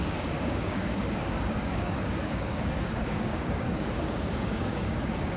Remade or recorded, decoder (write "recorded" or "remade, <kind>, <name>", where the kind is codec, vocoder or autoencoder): remade, codec, DAC